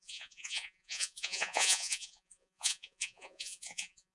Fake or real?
fake